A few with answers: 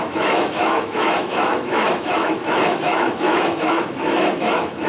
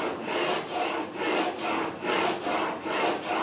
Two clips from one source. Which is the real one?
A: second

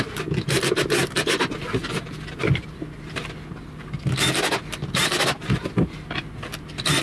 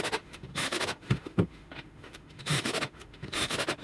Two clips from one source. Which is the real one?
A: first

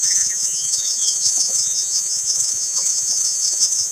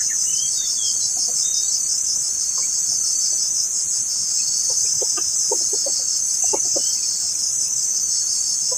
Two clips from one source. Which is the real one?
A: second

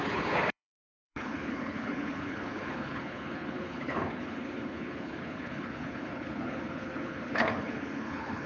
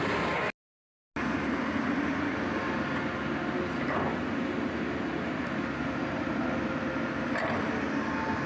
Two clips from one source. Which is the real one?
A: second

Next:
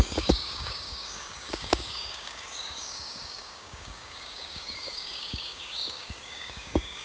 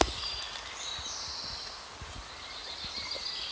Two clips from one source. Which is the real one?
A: second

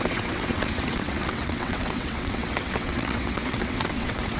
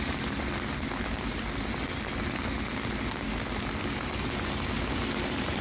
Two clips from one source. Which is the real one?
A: second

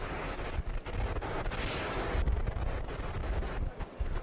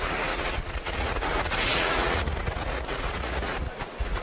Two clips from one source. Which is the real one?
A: first